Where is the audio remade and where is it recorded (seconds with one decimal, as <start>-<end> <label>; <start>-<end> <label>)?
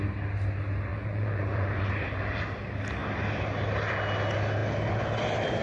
0.0-0.9 recorded; 0.9-1.9 remade; 1.9-5.6 recorded